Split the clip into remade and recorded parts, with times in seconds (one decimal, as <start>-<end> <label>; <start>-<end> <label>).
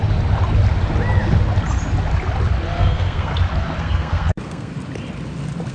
0.0-2.8 recorded; 2.8-3.3 remade; 3.3-3.8 recorded; 3.8-4.7 remade; 4.7-5.7 recorded